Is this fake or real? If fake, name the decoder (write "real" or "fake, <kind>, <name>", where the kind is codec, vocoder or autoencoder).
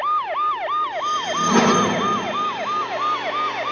real